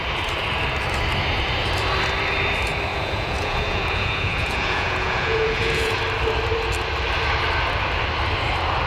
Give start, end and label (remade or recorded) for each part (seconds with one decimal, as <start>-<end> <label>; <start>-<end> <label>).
0.0-2.9 recorded; 2.9-6.0 remade; 6.0-8.9 recorded